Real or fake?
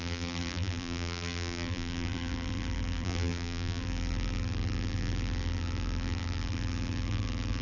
fake